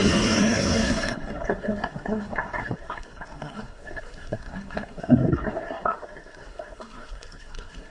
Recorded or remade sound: remade